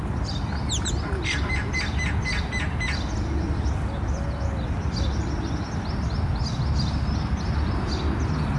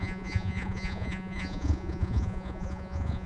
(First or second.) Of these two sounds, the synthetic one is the second